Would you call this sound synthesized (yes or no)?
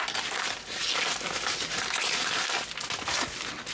no